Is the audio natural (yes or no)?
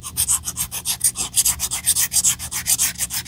yes